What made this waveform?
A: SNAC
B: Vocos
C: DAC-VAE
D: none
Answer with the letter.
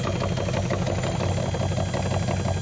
D